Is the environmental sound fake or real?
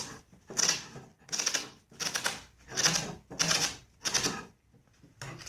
real